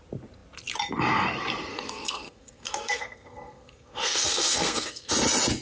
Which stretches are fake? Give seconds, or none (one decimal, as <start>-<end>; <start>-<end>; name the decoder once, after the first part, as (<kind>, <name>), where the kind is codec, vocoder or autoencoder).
1.7-5.1 (codec, SNAC)